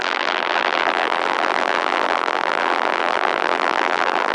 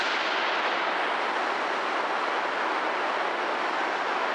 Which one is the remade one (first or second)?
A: first